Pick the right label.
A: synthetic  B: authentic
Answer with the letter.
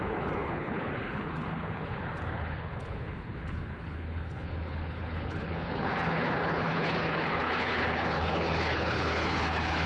A